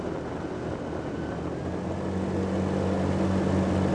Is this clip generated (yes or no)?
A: no